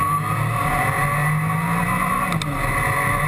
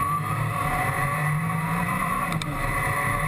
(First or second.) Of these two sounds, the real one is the first